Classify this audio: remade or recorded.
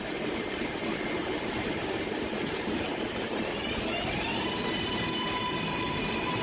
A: remade